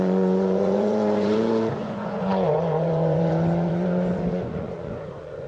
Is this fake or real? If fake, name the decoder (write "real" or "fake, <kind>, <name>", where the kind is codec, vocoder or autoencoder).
fake, vocoder, Vocos